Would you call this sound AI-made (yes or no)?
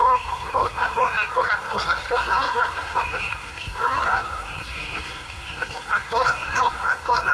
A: yes